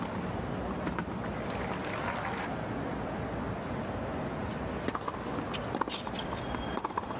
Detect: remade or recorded recorded